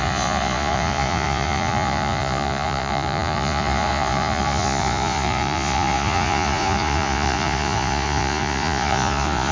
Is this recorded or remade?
remade